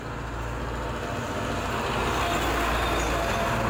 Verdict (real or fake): real